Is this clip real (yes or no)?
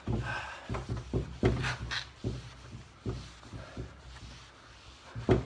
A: yes